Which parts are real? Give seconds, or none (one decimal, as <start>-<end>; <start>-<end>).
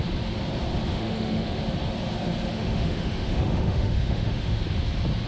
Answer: 0.0-0.9; 1.6-2.5; 4.6-5.3